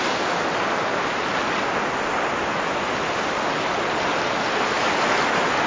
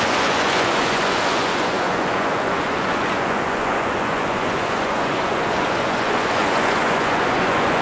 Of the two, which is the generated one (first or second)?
second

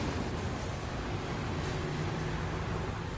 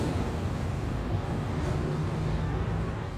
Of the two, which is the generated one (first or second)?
second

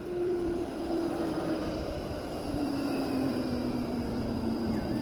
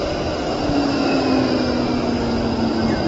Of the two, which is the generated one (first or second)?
first